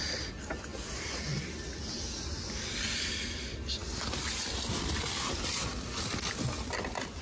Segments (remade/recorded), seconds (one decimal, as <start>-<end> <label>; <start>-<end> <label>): 0.0-7.2 recorded